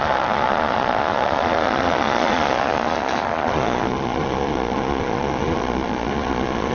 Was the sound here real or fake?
fake